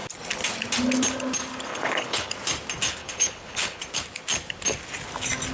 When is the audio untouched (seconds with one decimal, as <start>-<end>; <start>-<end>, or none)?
0.0-1.7; 2.3-3.0; 3.8-5.5

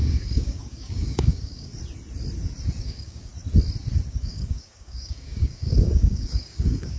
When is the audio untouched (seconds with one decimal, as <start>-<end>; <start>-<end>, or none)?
1.7-2.8; 3.3-4.1